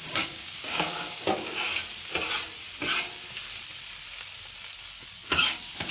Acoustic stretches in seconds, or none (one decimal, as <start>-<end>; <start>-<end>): 1.8-5.3